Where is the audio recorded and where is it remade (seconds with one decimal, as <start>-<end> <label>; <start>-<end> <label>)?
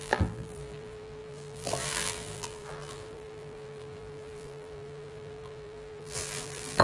0.0-6.8 remade